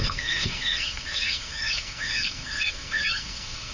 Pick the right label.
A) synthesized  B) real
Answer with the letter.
A